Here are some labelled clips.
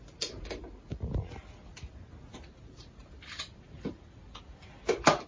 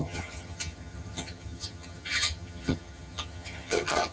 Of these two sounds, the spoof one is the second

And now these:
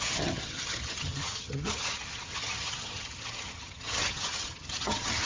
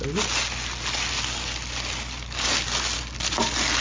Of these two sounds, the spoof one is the first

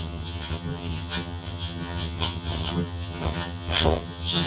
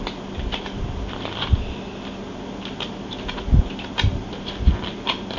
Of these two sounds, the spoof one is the first